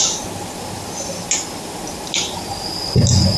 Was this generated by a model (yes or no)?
no